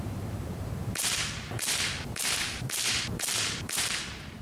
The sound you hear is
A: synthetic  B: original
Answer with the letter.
A